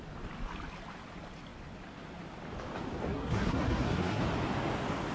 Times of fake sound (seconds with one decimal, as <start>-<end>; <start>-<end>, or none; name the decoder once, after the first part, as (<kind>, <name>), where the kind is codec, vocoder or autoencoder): 3.1-4.2 (codec, SNAC)